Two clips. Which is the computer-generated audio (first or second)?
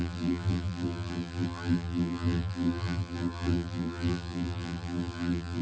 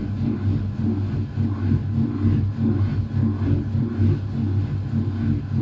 first